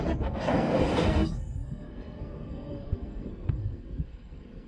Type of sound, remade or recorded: remade